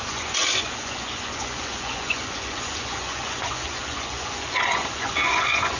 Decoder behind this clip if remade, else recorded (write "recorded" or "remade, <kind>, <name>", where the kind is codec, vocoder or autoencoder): remade, vocoder, Vocos